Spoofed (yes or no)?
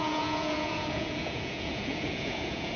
yes